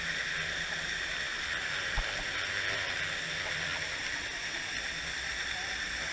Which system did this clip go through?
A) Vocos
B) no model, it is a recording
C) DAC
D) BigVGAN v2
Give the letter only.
B